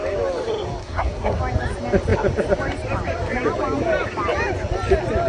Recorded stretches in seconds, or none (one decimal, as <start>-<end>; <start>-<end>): 0.0-0.8; 1.4-5.3